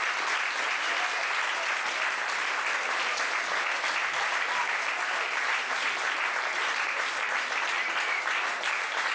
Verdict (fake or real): real